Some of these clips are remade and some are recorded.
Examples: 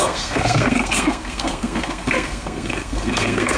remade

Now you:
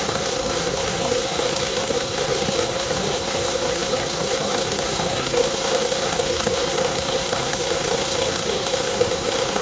remade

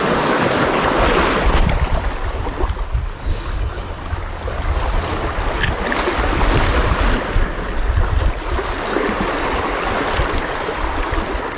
recorded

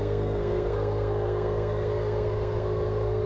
remade